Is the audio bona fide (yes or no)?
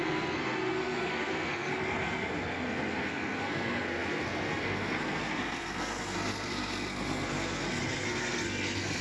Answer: no